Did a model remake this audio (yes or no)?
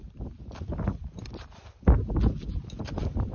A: no